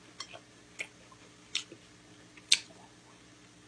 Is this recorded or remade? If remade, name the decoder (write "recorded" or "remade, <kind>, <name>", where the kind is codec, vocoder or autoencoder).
recorded